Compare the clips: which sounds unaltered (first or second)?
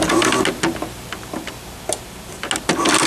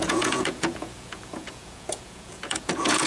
first